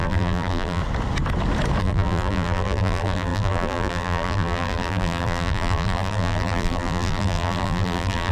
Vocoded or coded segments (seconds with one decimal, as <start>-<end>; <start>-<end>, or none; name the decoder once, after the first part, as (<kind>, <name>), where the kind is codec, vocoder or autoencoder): 0.0-0.8 (vocoder, BigVGAN v2); 1.8-8.3